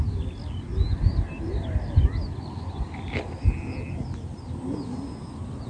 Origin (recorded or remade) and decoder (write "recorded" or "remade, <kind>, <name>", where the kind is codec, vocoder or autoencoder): recorded